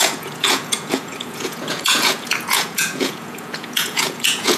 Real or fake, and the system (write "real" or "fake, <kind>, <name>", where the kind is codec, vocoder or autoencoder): fake, vocoder, Vocos